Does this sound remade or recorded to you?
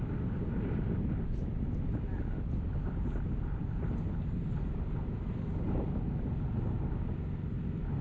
recorded